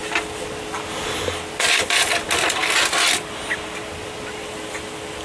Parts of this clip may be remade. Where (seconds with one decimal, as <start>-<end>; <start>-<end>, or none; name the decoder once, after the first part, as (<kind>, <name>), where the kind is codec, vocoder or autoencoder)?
none

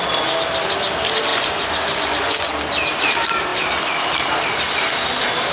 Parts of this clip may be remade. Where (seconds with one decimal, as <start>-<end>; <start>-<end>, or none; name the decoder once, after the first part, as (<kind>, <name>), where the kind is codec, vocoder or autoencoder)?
1.3-2.5 (vocoder, Vocos)

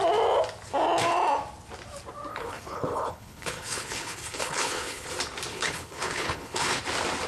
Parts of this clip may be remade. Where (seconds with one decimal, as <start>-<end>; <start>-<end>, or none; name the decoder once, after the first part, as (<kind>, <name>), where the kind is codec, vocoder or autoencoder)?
2.3-5.1 (codec, HILCodec); 5.5-6.8

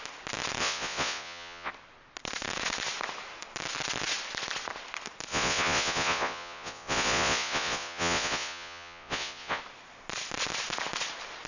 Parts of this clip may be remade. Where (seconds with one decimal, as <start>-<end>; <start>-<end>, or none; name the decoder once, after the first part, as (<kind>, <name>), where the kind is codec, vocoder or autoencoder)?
0.6-1.7 (vocoder, Vocos); 5.3-9.6